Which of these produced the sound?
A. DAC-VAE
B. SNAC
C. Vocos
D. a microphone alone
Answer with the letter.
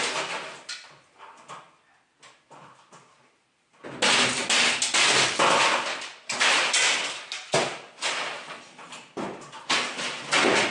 D